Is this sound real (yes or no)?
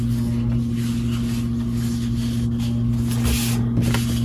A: yes